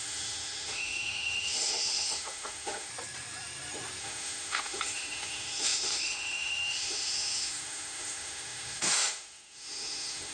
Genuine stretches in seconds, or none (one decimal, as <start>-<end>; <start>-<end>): 2.9-4.0